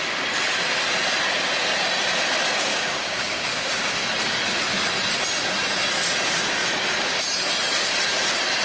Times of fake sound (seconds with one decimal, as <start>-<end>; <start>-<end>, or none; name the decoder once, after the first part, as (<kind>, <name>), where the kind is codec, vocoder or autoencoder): 2.7-4.1 (codec, DAC)